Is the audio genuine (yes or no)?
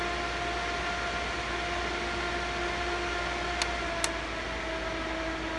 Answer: yes